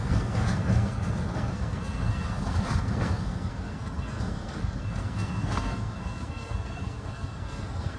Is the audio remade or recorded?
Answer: remade